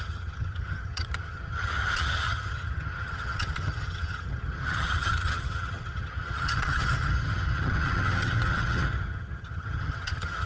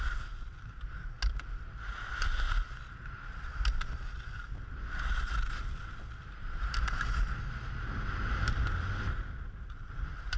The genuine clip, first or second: second